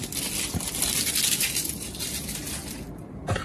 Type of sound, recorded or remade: recorded